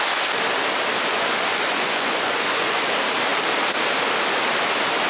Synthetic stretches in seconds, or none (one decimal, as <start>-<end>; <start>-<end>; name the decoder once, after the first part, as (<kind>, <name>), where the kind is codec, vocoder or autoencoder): 1.1-2.8 (vocoder, Vocos)